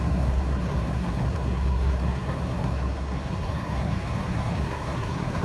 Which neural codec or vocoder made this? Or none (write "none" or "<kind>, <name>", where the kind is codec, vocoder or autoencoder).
codec, SNAC